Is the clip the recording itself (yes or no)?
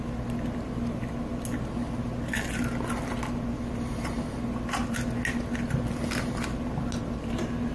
yes